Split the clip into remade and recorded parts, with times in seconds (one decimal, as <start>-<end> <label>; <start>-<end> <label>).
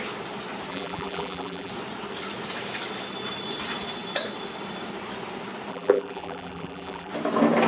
0.0-0.7 recorded; 0.7-1.7 remade; 1.7-5.7 recorded; 5.7-7.1 remade; 7.1-7.7 recorded